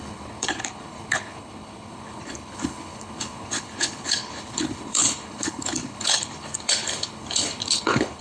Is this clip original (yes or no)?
no